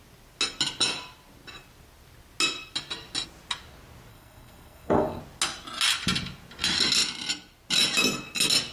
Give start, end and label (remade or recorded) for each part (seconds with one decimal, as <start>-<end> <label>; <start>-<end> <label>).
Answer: 0.0-4.1 recorded; 4.1-5.2 remade; 5.2-8.7 recorded